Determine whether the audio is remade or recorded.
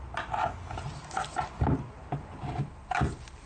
recorded